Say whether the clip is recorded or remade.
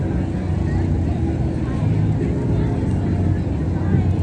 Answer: recorded